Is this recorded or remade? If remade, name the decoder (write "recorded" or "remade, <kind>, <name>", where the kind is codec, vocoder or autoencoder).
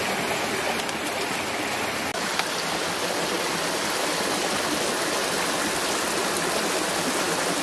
recorded